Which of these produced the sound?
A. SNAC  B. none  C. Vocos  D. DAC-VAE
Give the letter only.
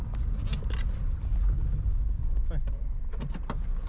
B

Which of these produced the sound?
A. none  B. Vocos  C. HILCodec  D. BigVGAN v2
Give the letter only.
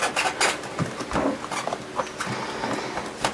A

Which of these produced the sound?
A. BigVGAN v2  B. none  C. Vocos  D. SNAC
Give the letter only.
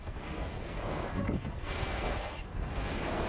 D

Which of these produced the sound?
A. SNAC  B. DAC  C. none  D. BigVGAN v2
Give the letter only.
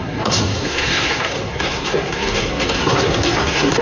A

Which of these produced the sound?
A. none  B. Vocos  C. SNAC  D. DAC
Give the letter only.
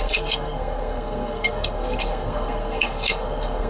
C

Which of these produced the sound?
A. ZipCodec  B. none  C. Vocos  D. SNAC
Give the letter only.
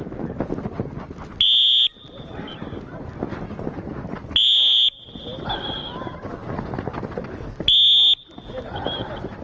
B